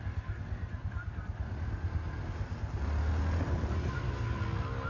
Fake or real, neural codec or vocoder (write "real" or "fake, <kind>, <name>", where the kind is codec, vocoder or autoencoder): real